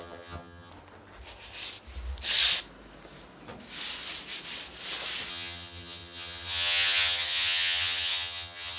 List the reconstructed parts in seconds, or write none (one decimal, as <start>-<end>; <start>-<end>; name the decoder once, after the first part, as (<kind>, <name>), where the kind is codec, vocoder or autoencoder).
0.0-0.7 (vocoder, HiFi-GAN); 5.3-8.8